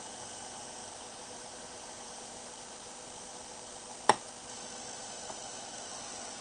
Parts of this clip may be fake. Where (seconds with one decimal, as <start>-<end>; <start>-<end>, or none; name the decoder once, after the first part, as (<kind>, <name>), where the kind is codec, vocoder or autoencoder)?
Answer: 0.0-0.8 (vocoder, Vocos); 1.6-2.4